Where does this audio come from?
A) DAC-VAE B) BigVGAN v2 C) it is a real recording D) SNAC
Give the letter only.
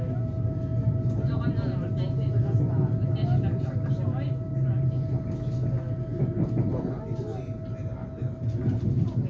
C